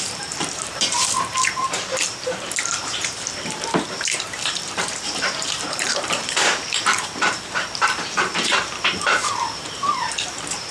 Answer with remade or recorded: remade